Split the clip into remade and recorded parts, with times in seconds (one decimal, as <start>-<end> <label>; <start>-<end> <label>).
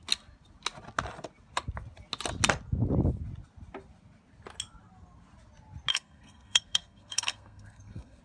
0.0-5.9 recorded; 5.9-8.2 remade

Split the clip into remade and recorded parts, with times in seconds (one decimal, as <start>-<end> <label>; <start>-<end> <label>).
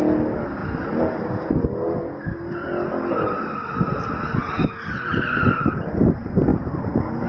0.0-7.3 recorded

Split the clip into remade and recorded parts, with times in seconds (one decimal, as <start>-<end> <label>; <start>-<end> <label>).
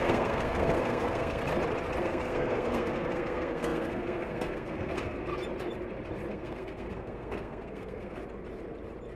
0.0-1.4 remade; 1.4-2.0 recorded; 2.0-5.3 remade; 5.3-6.3 recorded; 6.3-8.2 remade; 8.2-9.2 recorded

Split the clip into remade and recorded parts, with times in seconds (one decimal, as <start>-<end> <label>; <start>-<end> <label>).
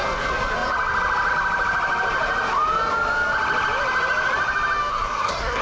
0.0-4.9 recorded; 4.9-5.6 remade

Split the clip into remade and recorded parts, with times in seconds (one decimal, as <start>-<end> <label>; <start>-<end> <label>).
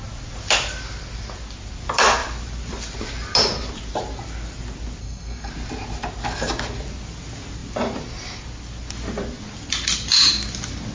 0.0-5.0 recorded; 5.0-5.5 remade; 5.5-10.9 recorded